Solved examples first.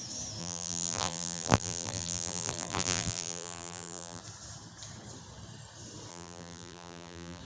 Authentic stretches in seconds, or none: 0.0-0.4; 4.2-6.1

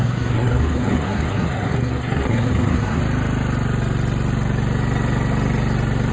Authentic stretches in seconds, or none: 3.0-6.1

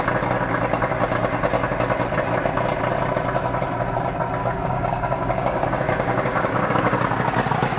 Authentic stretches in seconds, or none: 0.0-4.4; 6.8-7.8